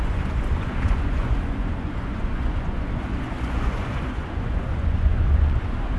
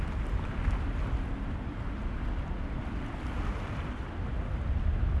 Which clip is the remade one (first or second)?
first